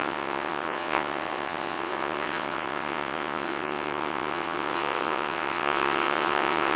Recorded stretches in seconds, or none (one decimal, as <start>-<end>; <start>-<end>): none